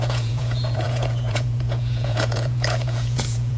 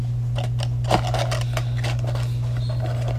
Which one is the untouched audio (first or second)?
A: second